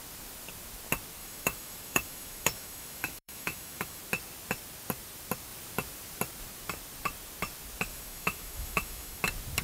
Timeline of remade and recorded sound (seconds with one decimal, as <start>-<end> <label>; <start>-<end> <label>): 0.0-1.2 recorded; 1.2-4.0 remade; 4.0-7.9 recorded; 7.9-9.2 remade; 9.2-9.6 recorded